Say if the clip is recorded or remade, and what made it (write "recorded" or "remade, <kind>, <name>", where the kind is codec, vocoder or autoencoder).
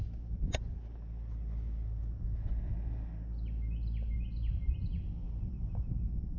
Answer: recorded